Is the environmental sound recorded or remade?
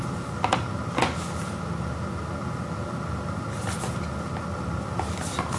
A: recorded